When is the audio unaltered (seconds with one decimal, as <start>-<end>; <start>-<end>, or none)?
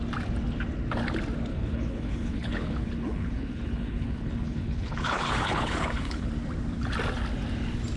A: 0.0-1.5; 6.3-8.0